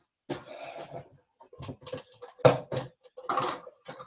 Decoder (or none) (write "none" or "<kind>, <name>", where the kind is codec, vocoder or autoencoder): none